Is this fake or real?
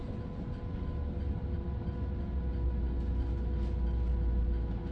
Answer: real